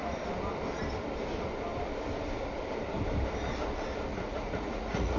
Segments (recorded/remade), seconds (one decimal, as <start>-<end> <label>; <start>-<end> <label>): 0.0-4.1 recorded; 4.1-5.2 remade